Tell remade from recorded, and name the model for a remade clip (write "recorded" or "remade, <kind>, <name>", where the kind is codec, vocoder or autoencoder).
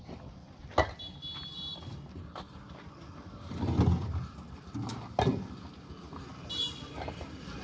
recorded